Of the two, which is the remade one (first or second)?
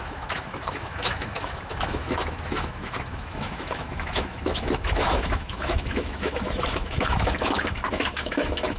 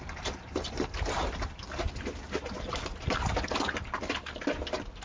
first